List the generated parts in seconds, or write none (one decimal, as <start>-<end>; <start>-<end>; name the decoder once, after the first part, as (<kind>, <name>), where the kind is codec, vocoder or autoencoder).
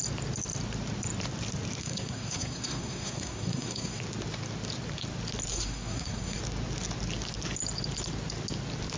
1.8-4.0 (codec, SNAC); 5.5-6.4